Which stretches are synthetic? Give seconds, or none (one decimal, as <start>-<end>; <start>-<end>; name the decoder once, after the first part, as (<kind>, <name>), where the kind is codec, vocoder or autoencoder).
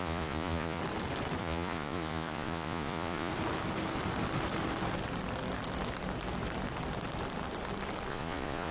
0.0-0.8 (vocoder, Vocos); 1.4-3.3; 8.1-8.7